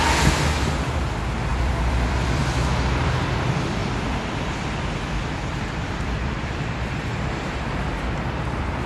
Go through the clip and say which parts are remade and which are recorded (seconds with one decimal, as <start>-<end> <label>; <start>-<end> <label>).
0.0-1.5 recorded; 1.5-2.4 remade; 2.4-3.8 recorded; 3.8-7.2 remade; 7.2-8.9 recorded